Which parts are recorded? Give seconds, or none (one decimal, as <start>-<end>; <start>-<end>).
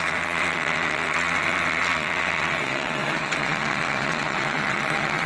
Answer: none